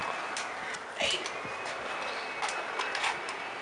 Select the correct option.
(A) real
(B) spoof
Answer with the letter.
A